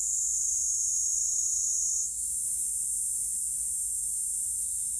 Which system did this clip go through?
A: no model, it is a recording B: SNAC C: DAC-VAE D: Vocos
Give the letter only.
A